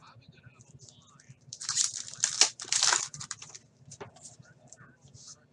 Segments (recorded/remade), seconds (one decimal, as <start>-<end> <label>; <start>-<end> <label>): 0.0-5.5 remade